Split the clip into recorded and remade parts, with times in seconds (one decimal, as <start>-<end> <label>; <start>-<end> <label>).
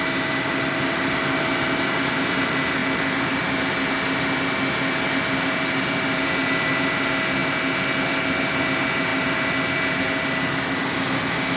0.0-11.6 recorded